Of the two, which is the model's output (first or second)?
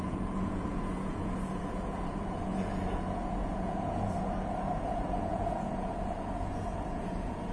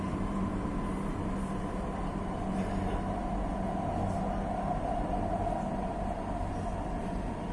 first